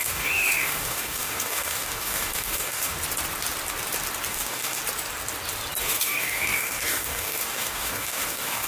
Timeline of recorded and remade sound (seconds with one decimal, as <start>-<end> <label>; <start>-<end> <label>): 0.0-2.9 remade; 2.9-4.3 recorded; 4.3-4.8 remade; 4.8-5.8 recorded; 5.8-8.7 remade